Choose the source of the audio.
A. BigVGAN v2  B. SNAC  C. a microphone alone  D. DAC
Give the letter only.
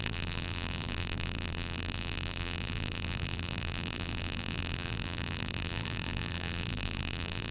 A